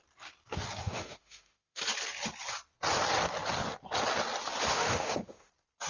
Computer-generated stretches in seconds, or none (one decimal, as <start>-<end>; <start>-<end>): 0.8-1.8; 4.7-5.5